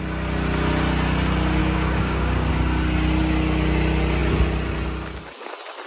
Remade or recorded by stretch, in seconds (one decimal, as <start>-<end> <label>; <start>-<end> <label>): 0.0-1.6 recorded; 1.6-2.5 remade; 2.5-5.9 recorded